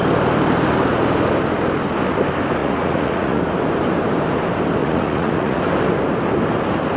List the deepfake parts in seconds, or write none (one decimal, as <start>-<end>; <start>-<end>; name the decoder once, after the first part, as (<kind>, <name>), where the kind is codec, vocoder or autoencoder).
2.6-3.4 (vocoder, Vocos); 4.8-5.6